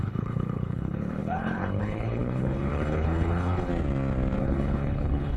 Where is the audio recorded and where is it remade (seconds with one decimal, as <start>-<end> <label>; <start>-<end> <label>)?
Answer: 0.0-3.7 remade; 3.7-4.4 recorded; 4.4-5.4 remade